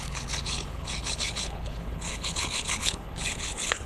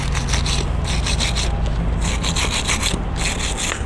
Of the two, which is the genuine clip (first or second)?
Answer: second